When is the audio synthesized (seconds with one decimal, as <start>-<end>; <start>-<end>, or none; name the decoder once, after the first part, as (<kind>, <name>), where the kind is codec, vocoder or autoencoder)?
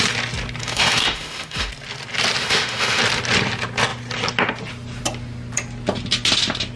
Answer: 0.6-1.7 (autoencoder, DAC-VAE); 2.4-3.0